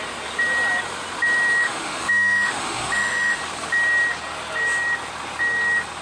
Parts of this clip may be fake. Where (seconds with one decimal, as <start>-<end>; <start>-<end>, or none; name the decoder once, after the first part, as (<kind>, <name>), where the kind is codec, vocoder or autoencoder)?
1.6-3.4 (autoencoder, DAC-VAE)